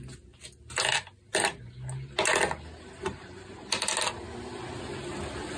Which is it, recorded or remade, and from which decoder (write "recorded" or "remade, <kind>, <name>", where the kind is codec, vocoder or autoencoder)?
recorded